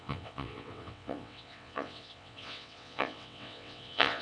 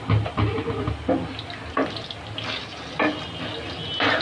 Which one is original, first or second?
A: second